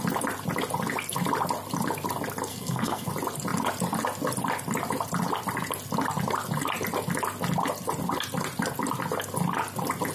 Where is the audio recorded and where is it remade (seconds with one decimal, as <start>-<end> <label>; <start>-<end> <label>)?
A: 0.0-2.5 recorded; 2.5-3.1 remade; 3.1-10.1 recorded